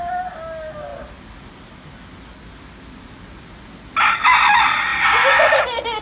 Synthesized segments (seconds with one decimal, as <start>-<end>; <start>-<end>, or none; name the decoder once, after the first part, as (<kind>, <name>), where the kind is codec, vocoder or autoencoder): none